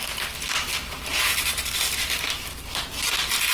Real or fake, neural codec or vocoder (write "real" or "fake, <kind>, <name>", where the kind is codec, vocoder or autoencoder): real